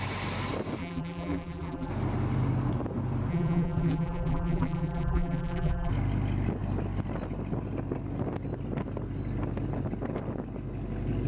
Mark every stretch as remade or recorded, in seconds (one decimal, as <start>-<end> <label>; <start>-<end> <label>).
0.0-0.8 recorded; 0.8-1.9 remade; 1.9-3.3 recorded; 3.3-5.9 remade; 5.9-11.3 recorded